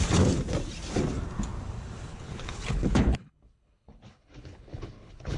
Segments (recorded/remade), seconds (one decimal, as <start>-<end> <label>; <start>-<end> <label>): 0.0-2.1 recorded; 2.1-5.4 remade